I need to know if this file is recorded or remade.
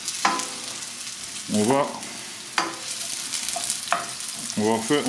recorded